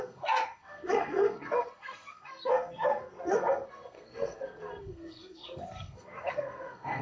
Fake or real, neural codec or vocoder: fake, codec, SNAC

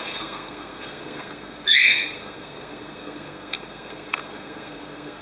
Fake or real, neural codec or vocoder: fake, codec, SNAC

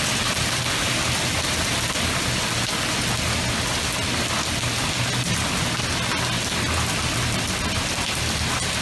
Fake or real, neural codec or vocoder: real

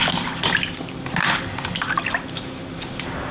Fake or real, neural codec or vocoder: real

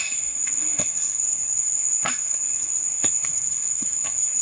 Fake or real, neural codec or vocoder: fake, codec, SNAC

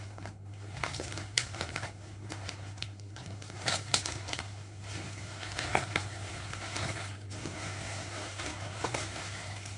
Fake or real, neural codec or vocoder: fake, codec, SNAC